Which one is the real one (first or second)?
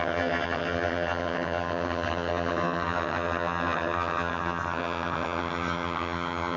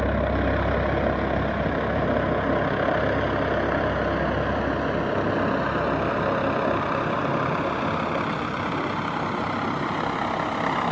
second